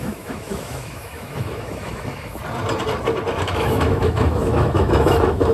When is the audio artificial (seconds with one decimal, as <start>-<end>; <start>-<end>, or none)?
0.0-2.4; 3.5-5.5